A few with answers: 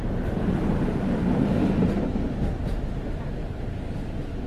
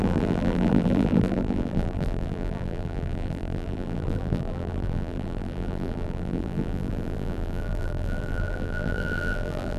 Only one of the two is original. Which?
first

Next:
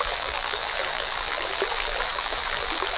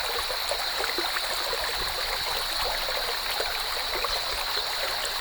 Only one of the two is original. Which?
second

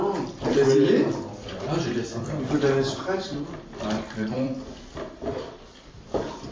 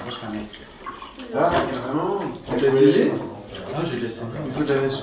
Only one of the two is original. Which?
second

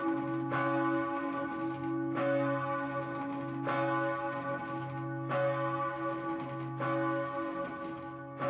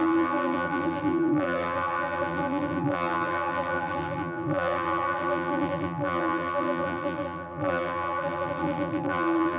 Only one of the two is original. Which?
first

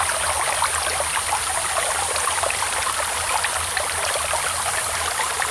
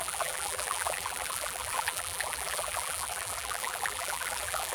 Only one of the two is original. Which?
first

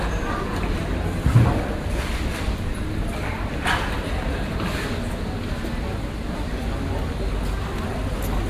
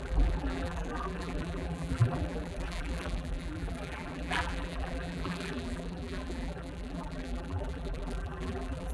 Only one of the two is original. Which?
first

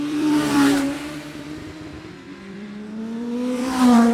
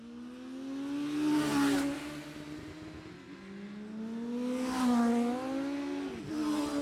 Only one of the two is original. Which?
second